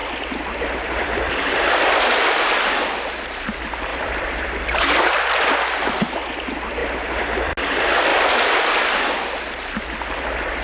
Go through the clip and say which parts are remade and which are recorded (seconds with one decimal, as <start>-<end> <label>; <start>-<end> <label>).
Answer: 0.0-2.6 remade; 2.6-3.9 recorded; 3.9-5.1 remade; 5.1-8.1 recorded; 8.1-8.7 remade; 8.7-10.6 recorded